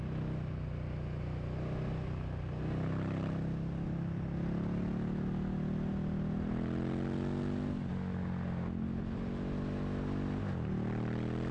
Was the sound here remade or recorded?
recorded